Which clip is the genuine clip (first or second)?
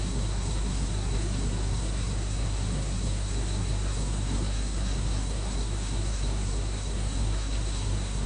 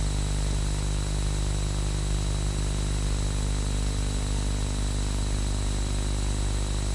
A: second